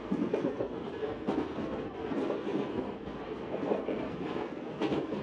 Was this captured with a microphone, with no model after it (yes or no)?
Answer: no